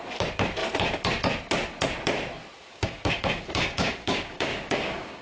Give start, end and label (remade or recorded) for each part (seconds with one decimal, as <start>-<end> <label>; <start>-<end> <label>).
0.0-2.7 recorded; 2.7-5.2 remade